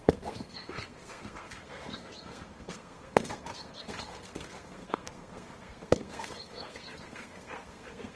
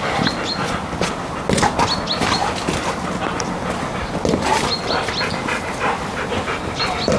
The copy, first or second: first